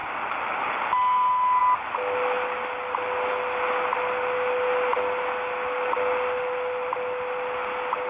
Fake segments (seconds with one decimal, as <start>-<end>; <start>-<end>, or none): none